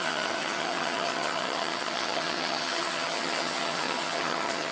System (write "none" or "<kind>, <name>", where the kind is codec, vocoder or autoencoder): vocoder, HiFi-GAN